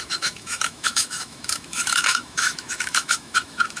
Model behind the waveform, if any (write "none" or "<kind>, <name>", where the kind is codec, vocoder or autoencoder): autoencoder, DAC-VAE